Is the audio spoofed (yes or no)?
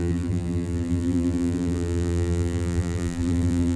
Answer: yes